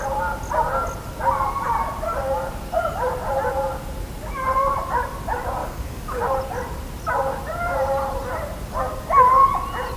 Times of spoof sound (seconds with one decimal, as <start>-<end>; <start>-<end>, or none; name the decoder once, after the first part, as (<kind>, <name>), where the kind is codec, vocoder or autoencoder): 5.6-6.2 (codec, DAC)